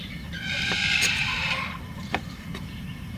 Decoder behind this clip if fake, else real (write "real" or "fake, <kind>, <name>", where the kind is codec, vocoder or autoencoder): fake, vocoder, BigVGAN v2